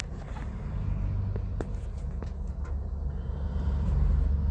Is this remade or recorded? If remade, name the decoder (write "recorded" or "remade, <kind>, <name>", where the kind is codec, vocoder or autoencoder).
recorded